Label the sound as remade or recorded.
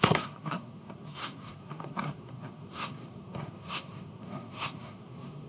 remade